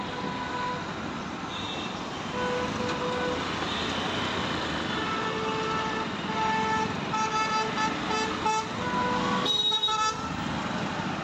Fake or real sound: real